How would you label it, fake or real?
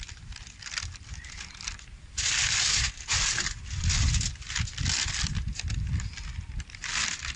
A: real